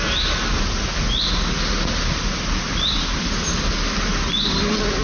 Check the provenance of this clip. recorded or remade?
recorded